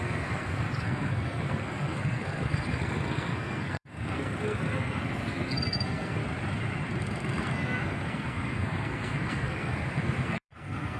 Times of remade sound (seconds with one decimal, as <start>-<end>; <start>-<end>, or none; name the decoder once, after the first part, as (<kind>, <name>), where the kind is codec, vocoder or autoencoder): 0.0-6.2 (codec, SNAC); 7.0-11.0